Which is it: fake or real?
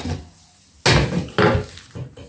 real